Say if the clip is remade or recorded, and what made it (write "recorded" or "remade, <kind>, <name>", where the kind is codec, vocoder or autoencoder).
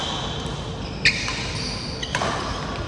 recorded